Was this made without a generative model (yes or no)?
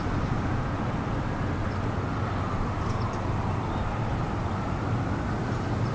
yes